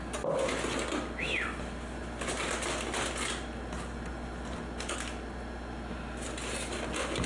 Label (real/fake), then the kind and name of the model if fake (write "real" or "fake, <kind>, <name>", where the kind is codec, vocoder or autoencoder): real